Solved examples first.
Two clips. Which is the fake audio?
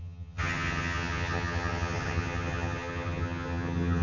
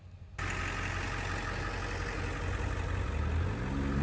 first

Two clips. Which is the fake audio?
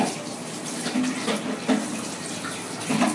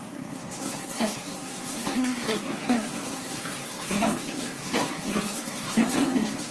second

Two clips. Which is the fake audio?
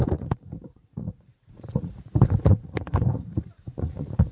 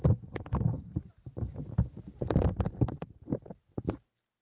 first